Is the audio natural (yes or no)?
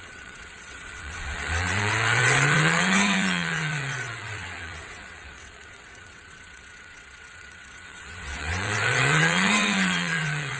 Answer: no